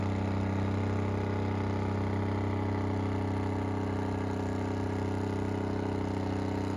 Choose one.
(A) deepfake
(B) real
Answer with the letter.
B